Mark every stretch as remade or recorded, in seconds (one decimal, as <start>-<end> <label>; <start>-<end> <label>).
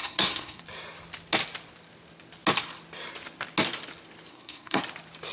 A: 0.0-0.6 remade; 0.6-4.3 recorded; 4.3-4.8 remade; 4.8-5.3 recorded